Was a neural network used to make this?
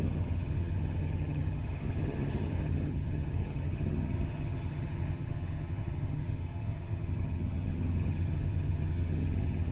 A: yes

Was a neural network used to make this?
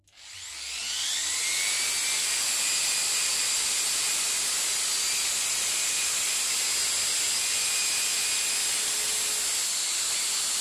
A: no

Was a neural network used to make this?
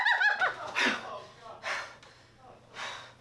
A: no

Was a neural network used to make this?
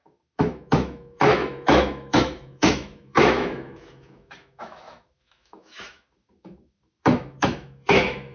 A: yes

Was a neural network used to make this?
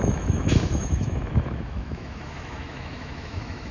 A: yes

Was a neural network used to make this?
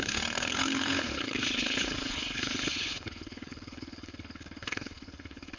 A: yes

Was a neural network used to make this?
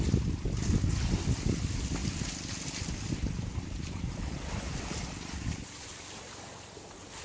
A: no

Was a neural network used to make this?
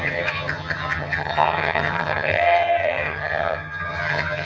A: yes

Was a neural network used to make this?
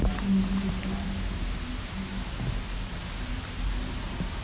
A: no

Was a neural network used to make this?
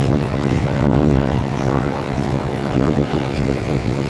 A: yes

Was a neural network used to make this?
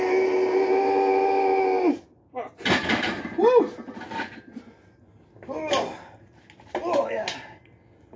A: no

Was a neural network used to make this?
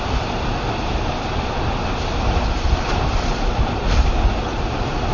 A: no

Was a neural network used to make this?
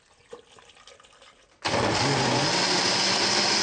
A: no